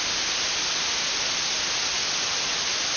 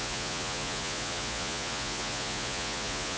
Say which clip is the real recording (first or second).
first